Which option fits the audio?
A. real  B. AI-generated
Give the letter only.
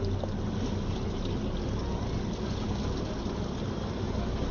A